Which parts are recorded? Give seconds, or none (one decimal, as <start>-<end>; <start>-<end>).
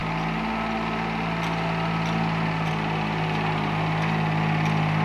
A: 0.0-5.0